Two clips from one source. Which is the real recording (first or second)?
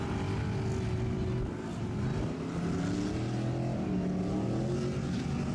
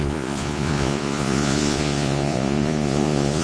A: first